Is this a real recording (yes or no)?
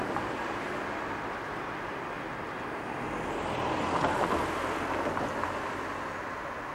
yes